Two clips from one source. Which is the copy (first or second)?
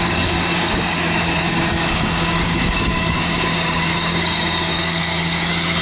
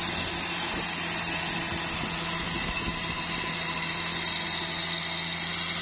first